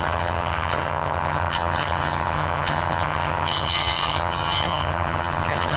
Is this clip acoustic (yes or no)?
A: no